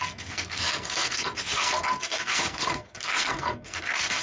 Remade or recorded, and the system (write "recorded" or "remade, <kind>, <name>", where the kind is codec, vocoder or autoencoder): remade, codec, SNAC